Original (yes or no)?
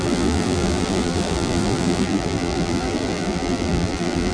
no